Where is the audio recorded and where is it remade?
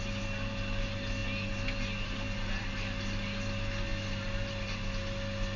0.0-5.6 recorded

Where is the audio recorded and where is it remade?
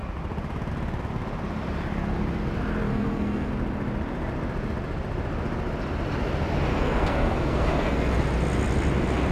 0.0-2.9 recorded; 2.9-3.5 remade; 3.5-6.7 recorded; 6.7-8.1 remade; 8.1-9.3 recorded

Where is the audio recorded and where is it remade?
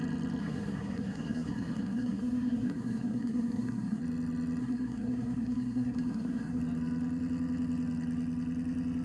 0.0-0.4 recorded; 0.4-4.0 remade; 4.0-4.6 recorded; 4.6-6.6 remade; 6.6-9.0 recorded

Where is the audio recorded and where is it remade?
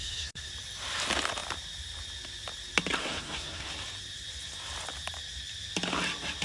0.0-0.5 remade; 0.5-3.0 recorded; 3.0-3.7 remade; 3.7-6.4 recorded